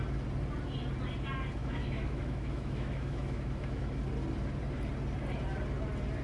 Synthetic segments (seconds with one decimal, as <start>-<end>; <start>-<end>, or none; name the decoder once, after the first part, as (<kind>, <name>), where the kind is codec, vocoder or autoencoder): 1.6-4.0 (autoencoder, DAC-VAE)